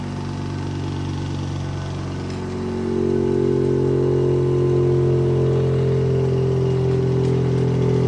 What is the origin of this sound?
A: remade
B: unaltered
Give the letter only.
B